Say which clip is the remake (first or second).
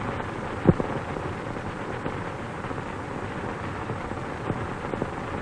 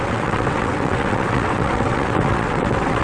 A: second